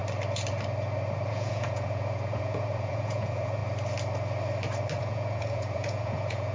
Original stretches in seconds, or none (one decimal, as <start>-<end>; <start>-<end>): 0.0-1.3; 3.6-5.0

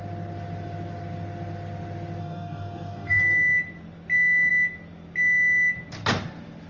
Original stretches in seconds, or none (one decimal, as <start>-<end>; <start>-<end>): 0.0-2.2; 3.2-6.7